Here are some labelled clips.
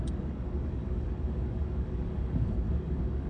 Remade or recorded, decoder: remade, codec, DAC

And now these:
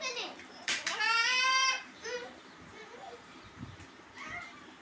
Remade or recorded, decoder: remade, vocoder, BigVGAN v2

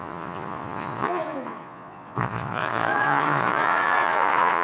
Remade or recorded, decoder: remade, vocoder, Vocos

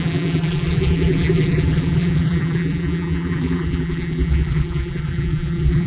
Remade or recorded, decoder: remade, vocoder, BigVGAN v2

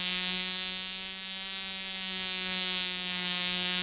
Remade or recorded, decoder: remade, codec, DAC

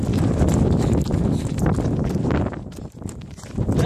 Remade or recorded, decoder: recorded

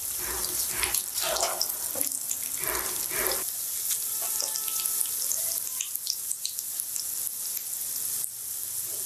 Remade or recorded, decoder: recorded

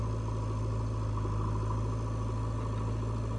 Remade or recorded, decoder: recorded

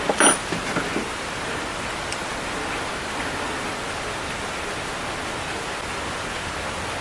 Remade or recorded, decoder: recorded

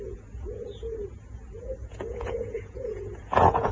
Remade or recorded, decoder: remade, vocoder, Vocos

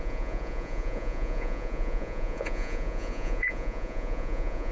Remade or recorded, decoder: remade, vocoder, Vocos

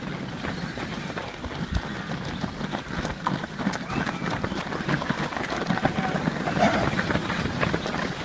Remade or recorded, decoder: recorded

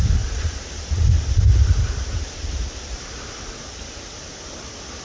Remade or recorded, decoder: recorded